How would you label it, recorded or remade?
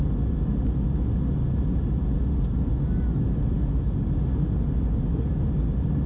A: recorded